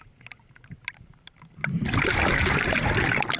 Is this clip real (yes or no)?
yes